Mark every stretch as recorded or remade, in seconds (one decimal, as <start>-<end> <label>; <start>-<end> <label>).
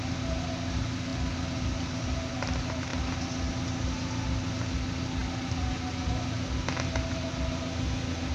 0.0-8.3 recorded